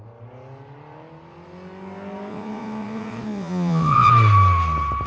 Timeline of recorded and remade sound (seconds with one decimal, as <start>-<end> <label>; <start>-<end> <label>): 0.0-2.3 recorded; 2.3-4.1 remade; 4.1-5.1 recorded

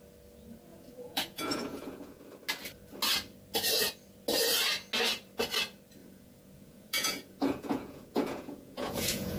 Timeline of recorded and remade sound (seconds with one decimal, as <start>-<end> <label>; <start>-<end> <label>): 0.0-0.7 recorded; 0.7-2.2 remade; 2.2-6.0 recorded; 6.0-9.4 remade

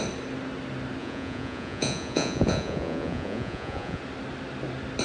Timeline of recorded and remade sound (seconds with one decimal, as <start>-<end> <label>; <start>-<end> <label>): 0.0-1.0 recorded; 1.0-4.0 remade; 4.0-5.0 recorded